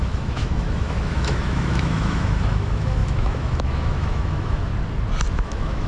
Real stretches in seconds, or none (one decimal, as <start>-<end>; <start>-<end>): 4.7-5.3